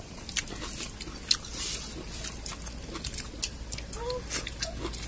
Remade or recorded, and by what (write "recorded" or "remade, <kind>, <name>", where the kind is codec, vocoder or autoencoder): recorded